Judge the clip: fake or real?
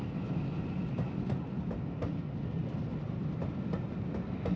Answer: real